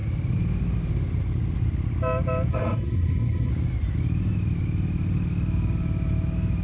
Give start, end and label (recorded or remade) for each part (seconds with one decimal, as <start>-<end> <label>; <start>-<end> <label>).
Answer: 0.0-2.5 recorded; 2.5-3.5 remade; 3.5-6.6 recorded